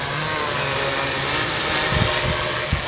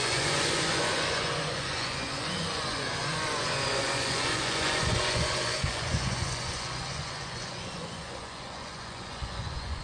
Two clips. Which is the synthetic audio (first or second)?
second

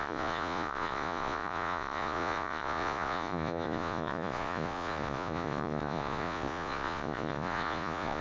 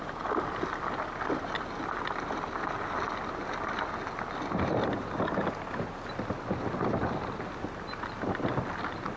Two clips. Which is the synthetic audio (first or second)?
first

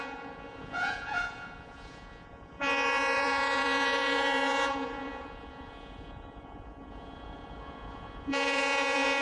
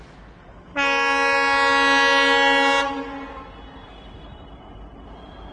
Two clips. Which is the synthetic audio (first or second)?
first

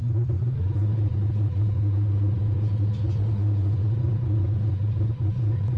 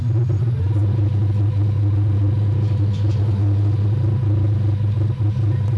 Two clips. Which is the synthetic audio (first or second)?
first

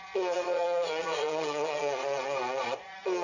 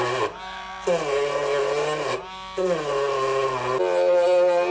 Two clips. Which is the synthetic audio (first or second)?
first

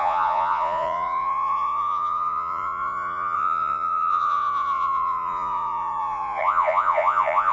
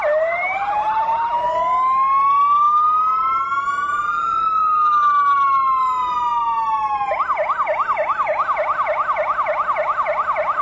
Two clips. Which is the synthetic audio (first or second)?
first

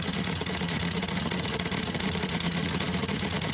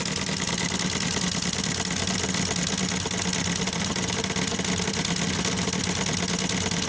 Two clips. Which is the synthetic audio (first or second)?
first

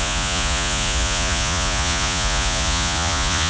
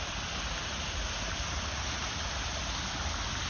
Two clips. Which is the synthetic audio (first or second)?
first